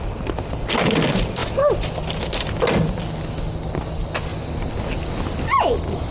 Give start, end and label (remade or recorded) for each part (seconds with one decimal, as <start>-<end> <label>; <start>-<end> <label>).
0.0-6.1 recorded

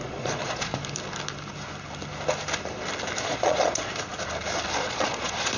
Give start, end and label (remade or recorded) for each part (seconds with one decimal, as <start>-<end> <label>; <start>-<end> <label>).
0.0-0.7 remade; 0.7-3.2 recorded; 3.2-3.9 remade; 3.9-4.8 recorded; 4.8-5.6 remade

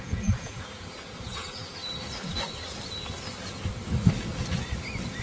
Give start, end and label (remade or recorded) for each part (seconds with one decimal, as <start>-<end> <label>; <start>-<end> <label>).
0.0-1.8 remade; 1.8-5.2 recorded

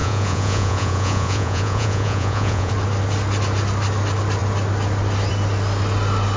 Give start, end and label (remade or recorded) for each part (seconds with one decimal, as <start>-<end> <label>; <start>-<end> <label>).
0.0-2.7 remade; 2.7-6.4 recorded

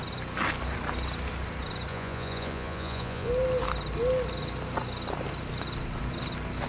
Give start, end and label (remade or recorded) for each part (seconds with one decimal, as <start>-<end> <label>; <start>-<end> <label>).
0.0-1.9 recorded; 1.9-3.3 remade; 3.3-6.7 recorded

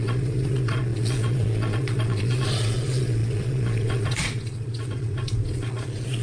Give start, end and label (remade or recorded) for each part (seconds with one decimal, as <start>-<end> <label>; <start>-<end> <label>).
0.0-6.2 remade